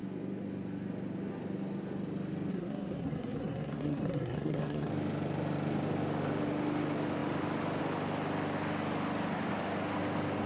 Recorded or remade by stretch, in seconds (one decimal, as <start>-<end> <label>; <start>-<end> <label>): 0.0-2.5 recorded; 2.5-4.9 remade; 4.9-10.5 recorded